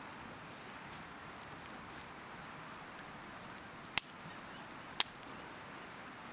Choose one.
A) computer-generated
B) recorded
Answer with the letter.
B